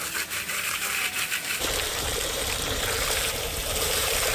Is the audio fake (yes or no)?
yes